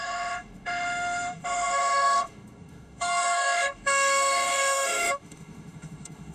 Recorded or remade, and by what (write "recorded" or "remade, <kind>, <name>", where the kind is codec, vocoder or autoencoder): remade, autoencoder, DAC-VAE